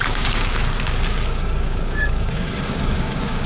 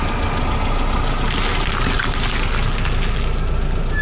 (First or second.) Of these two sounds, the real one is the second